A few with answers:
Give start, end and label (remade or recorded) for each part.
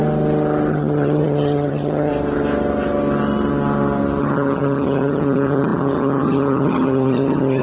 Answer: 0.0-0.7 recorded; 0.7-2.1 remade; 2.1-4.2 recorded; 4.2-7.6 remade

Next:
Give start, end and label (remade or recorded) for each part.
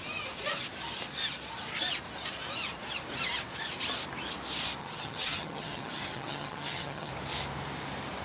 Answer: 0.0-4.8 recorded; 4.8-7.1 remade; 7.1-8.2 recorded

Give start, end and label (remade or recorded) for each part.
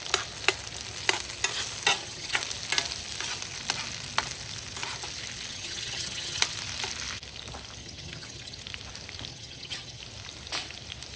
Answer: 0.0-1.9 recorded; 1.9-2.4 remade; 2.4-5.5 recorded; 5.5-6.4 remade; 6.4-7.8 recorded; 7.8-8.6 remade; 8.6-9.3 recorded; 9.3-10.0 remade; 10.0-11.2 recorded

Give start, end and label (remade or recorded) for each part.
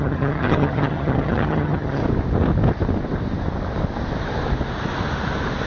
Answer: 0.0-2.0 remade; 2.0-5.7 recorded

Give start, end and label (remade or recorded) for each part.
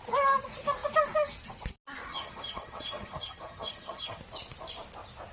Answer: 0.0-2.1 recorded; 2.1-4.2 remade; 4.2-5.3 recorded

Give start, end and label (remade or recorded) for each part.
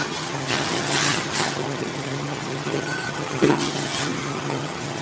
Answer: 0.0-5.0 remade